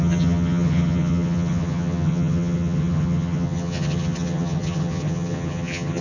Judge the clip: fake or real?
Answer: fake